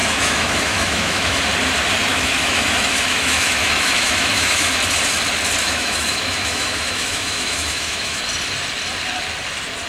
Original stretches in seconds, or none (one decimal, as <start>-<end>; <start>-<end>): 1.4-2.1; 4.7-5.6; 8.2-9.9